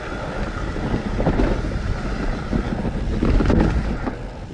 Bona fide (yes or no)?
yes